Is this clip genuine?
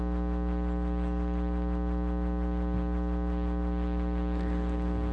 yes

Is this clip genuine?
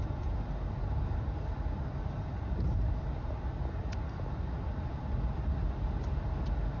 yes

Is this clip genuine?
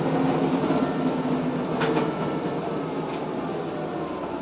yes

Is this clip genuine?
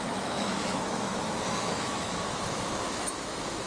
no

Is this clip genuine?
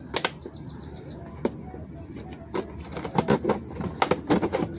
yes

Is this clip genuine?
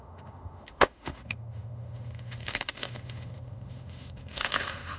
no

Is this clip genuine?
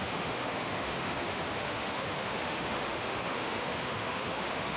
no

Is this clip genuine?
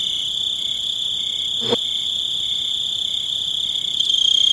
yes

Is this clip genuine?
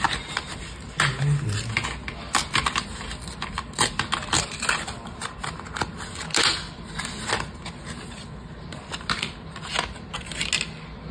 yes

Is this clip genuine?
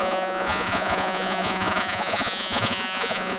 no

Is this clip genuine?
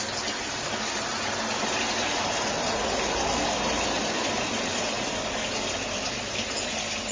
yes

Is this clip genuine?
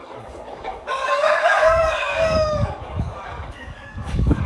no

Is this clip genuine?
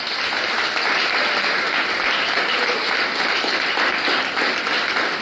yes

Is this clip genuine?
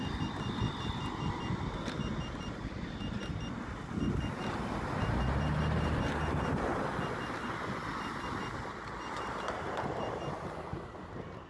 yes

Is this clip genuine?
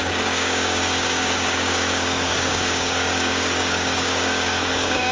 no